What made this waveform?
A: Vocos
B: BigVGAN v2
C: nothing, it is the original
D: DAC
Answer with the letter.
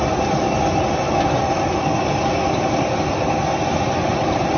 C